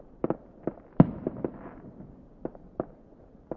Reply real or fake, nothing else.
fake